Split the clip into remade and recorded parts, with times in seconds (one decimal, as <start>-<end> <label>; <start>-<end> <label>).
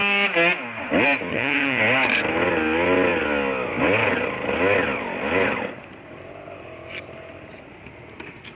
0.0-1.3 recorded; 1.3-1.8 remade; 1.8-8.5 recorded